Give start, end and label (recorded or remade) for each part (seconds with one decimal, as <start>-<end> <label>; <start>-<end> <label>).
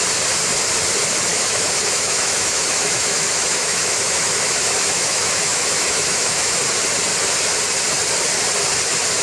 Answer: 0.0-1.3 recorded; 1.3-6.5 remade; 6.5-9.2 recorded